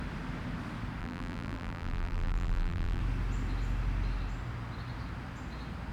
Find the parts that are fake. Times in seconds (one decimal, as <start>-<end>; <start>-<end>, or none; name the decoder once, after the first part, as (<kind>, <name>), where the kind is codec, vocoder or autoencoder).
1.0-3.0 (vocoder, BigVGAN v2)